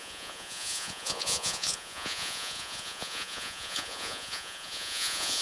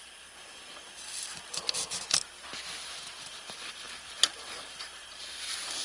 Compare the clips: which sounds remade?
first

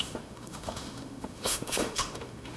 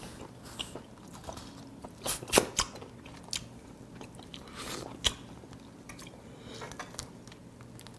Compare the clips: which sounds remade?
first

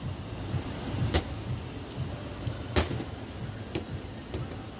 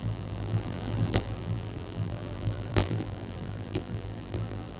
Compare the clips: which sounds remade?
second